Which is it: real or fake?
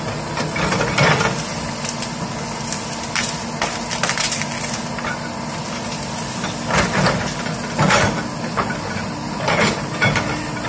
real